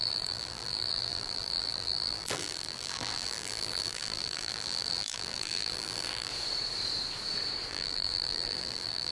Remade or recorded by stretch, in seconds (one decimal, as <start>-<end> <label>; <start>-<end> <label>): 0.0-6.3 remade; 6.3-7.7 recorded; 7.7-9.1 remade